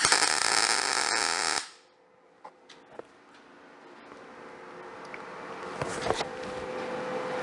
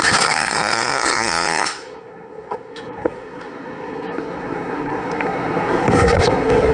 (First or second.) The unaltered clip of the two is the first